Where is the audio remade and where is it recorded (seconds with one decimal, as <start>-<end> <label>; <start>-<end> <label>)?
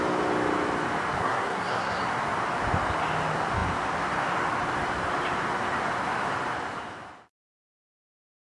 0.0-1.2 recorded; 1.2-2.0 remade; 2.0-8.4 recorded